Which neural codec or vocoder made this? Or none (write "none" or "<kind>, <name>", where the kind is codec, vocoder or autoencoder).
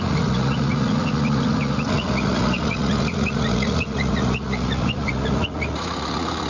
vocoder, Vocos